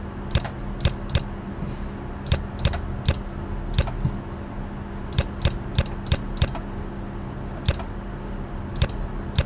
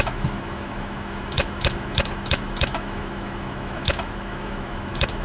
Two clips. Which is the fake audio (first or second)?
second